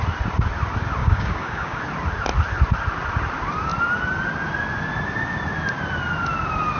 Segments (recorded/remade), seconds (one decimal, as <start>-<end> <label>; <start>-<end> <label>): 0.0-1.0 recorded; 1.0-1.8 remade; 1.8-6.8 recorded